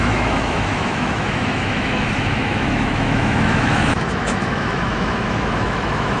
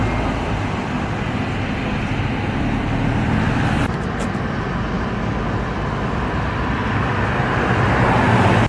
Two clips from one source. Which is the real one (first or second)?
second